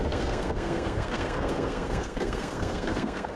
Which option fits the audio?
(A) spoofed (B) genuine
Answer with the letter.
A